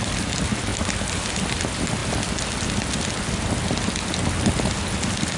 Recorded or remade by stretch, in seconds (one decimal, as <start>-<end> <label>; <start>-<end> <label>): 0.0-5.4 recorded